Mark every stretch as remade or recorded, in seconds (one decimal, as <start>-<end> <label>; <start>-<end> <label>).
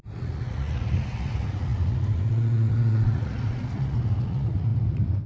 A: 0.0-5.3 remade